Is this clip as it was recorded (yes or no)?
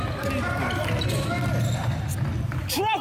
yes